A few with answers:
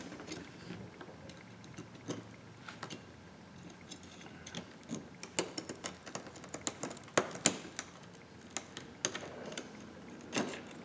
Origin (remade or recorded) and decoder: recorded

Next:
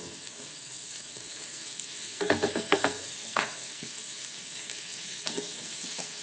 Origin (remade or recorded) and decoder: remade, codec, SNAC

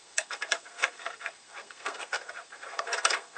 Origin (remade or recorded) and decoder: remade, codec, SNAC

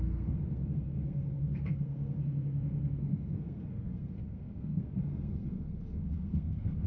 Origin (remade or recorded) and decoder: remade, codec, SNAC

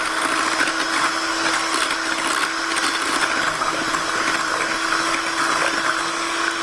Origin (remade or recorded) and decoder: recorded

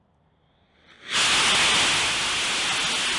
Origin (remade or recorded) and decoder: recorded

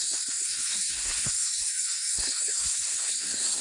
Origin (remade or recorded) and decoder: remade, codec, SNAC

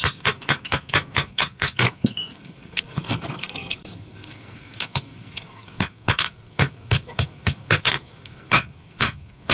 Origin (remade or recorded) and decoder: remade, codec, SNAC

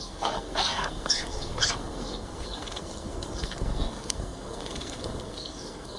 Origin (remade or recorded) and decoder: remade, codec, SNAC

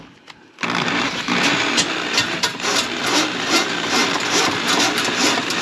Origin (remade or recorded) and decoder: recorded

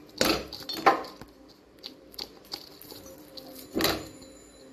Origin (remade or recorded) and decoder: recorded